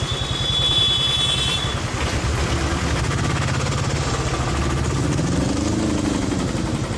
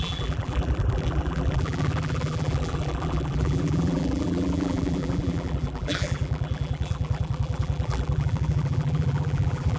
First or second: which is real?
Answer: first